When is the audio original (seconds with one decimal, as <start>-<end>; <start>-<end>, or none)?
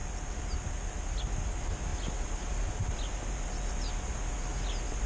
0.0-5.1